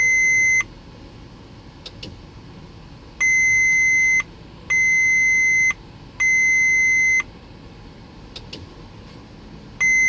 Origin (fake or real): real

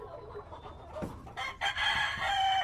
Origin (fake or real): real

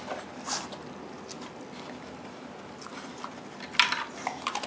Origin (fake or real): real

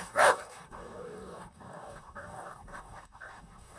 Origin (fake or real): fake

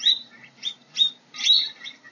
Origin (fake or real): fake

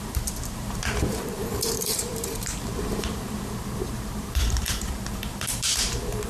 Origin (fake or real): fake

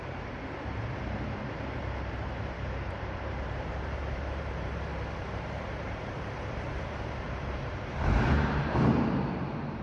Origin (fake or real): fake